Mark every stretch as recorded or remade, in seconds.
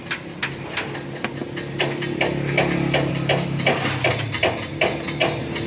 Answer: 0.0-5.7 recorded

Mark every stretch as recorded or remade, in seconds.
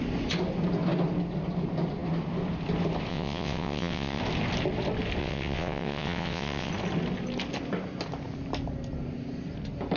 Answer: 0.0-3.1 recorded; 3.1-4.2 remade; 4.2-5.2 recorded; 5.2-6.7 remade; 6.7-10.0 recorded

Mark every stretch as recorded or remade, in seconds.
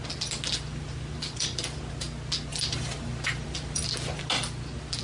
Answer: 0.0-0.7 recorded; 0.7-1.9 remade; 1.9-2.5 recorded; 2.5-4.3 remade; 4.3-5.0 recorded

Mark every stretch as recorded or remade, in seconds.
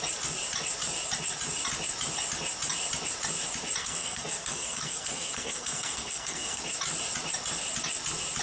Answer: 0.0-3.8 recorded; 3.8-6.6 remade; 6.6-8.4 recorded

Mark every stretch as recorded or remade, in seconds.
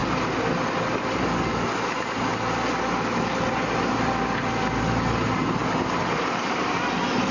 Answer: 0.0-7.3 recorded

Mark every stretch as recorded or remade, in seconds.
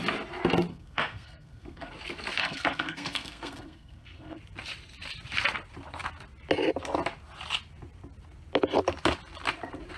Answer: 0.0-0.7 recorded; 0.7-1.9 remade; 1.9-2.4 recorded; 2.4-4.4 remade; 4.4-10.0 recorded